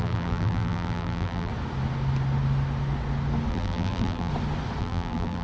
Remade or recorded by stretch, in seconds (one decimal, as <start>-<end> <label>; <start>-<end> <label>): 0.0-1.5 remade; 1.5-3.5 recorded; 3.5-4.3 remade; 4.3-4.8 recorded; 4.8-5.4 remade